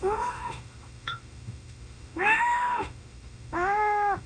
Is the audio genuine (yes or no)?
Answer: no